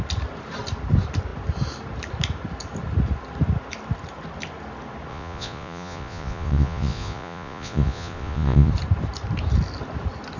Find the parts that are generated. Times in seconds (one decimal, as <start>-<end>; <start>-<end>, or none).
5.1-8.7